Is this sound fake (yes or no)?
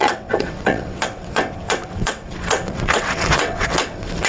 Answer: yes